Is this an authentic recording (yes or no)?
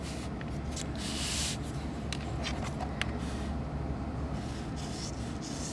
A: yes